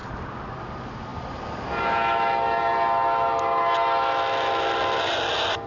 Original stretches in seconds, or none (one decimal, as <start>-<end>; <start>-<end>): 0.0-5.7

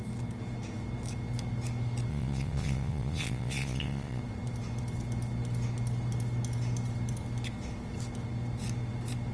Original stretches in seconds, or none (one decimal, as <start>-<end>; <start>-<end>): 0.0-2.1; 4.2-9.3